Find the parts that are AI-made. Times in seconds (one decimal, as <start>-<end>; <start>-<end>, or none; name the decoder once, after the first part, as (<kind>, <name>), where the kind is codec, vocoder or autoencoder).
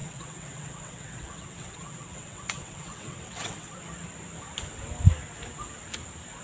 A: 0.0-3.8 (vocoder, WaveNeXt)